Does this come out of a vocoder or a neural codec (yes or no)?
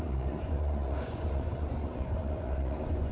yes